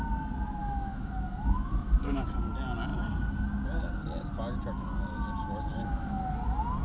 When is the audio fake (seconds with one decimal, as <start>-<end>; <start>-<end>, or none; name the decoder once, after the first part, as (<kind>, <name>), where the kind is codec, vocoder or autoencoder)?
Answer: 0.6-2.3 (autoencoder, DAC-VAE); 5.7-6.2